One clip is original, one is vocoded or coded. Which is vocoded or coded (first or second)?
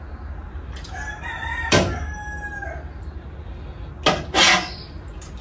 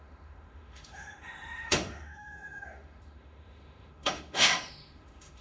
second